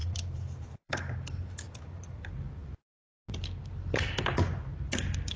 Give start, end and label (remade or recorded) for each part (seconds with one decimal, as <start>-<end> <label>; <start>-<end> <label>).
0.0-2.2 remade; 2.2-5.4 recorded

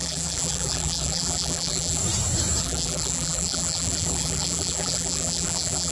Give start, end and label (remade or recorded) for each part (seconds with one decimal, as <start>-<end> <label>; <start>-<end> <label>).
0.0-2.0 remade; 2.0-2.6 recorded; 2.6-5.9 remade